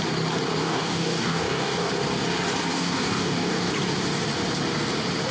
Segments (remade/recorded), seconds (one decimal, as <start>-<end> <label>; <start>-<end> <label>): 0.0-0.6 recorded; 0.6-1.9 remade; 1.9-2.7 recorded; 2.7-3.7 remade; 3.7-5.3 recorded